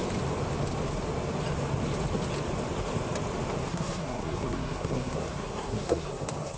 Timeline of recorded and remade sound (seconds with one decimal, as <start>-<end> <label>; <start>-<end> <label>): 0.0-3.7 recorded; 3.7-6.6 remade